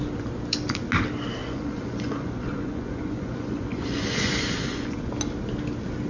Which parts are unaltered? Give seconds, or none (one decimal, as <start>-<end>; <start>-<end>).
0.0-1.4; 5.1-6.1